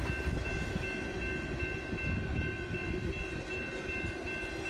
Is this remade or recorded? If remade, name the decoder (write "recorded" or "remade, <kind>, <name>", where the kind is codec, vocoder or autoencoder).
recorded